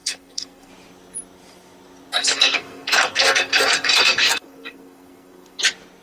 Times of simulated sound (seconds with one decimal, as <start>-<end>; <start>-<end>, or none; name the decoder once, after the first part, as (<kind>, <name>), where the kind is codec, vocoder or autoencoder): 0.0-0.7 (codec, SNAC); 2.2-5.6

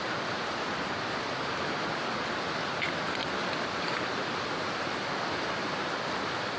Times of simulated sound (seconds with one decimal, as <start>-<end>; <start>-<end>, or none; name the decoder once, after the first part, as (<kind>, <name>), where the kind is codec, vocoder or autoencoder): none

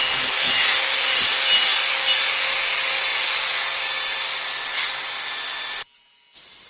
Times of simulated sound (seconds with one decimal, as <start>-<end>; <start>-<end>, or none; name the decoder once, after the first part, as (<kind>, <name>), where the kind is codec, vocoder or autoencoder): 3.1-4.6 (vocoder, BigVGAN v2)